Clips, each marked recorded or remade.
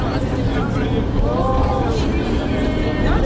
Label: recorded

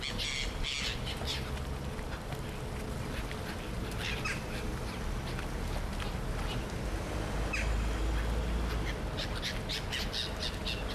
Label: recorded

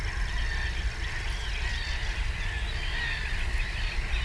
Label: recorded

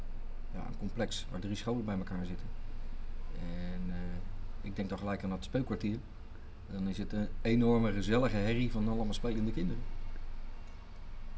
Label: recorded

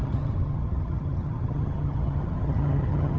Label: remade